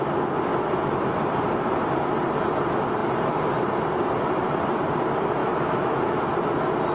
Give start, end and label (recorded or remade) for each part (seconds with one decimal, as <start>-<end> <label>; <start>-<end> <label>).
0.0-0.5 recorded; 0.5-1.5 remade; 1.5-3.0 recorded; 3.0-4.9 remade; 4.9-6.9 recorded